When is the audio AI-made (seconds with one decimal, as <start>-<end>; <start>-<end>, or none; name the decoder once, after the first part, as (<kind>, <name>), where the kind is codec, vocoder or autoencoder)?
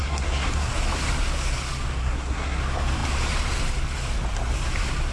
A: 0.0-0.7 (codec, SNAC); 2.0-2.6